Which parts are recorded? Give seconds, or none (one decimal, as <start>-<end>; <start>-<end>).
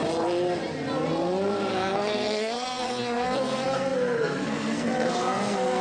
0.0-1.7